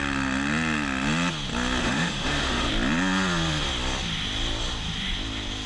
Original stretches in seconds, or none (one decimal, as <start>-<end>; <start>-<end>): 0.0-1.8; 2.7-5.7